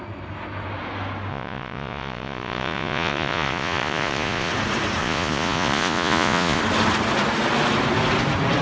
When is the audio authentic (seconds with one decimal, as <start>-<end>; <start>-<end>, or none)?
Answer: 0.0-1.3; 4.5-5.0; 6.6-8.6